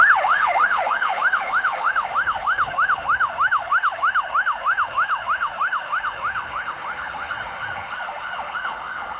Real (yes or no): no